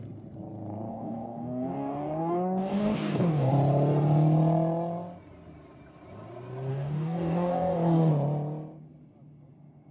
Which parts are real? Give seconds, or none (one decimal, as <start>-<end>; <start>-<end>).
0.0-0.9; 3.5-6.7; 8.1-9.9